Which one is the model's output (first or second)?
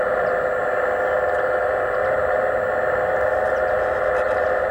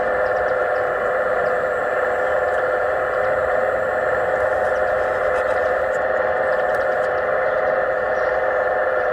second